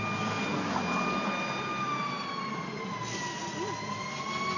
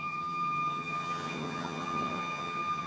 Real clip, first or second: first